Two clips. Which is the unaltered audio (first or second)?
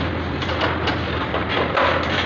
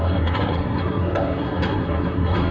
first